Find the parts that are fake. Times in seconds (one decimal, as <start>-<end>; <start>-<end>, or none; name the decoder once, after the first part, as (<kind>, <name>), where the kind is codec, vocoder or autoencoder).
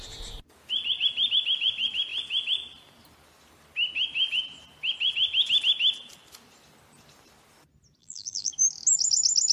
8.0-8.5 (vocoder, BigVGAN v2)